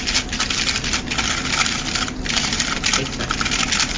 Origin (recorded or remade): recorded